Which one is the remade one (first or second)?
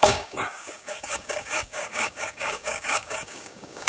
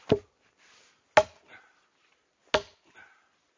first